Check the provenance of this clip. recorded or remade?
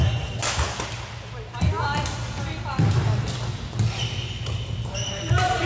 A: recorded